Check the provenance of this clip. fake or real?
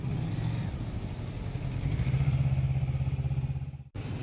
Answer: real